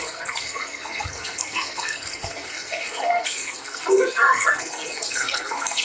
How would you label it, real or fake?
fake